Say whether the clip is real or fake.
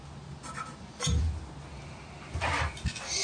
real